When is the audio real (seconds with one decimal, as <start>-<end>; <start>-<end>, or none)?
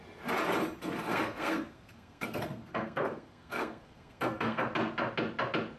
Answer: 0.0-1.1; 4.6-5.8